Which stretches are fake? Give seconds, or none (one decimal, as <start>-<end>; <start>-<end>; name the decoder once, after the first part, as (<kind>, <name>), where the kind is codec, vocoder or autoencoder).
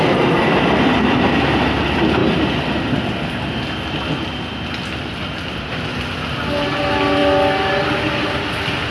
none